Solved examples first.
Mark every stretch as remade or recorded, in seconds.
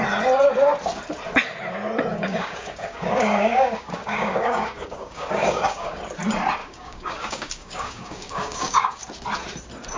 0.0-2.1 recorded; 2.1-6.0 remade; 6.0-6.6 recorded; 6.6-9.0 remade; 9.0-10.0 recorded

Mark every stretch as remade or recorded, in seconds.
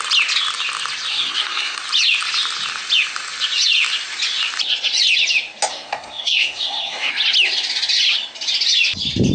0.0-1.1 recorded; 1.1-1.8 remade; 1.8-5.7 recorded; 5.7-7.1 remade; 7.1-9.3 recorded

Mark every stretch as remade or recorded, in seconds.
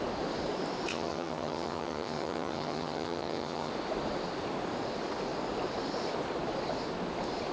0.0-0.9 recorded; 0.9-3.7 remade; 3.7-7.5 recorded